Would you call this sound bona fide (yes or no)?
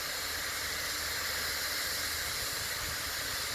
yes